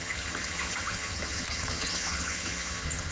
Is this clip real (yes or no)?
no